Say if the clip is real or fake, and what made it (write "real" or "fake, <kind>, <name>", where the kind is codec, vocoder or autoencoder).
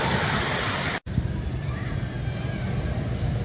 real